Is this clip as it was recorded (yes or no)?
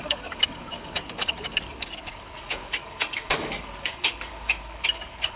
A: no